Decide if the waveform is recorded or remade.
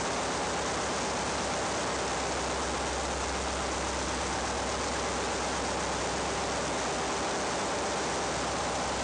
recorded